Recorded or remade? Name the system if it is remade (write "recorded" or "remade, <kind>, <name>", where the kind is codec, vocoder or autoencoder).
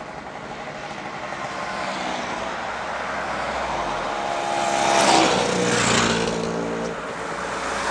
recorded